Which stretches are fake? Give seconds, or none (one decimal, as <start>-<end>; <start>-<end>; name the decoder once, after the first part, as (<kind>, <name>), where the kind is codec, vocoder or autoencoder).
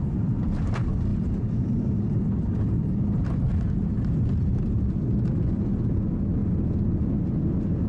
none